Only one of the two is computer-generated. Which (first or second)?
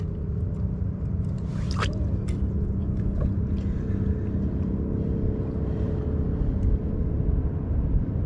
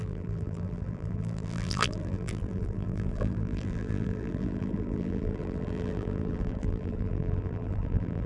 second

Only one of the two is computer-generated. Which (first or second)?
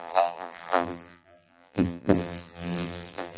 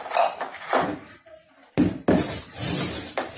first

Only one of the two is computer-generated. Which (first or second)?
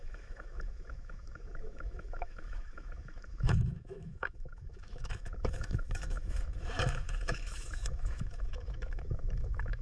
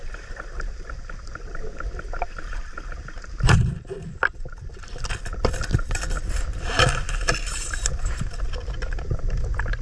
first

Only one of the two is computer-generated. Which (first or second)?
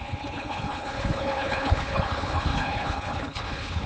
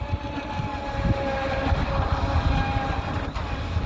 first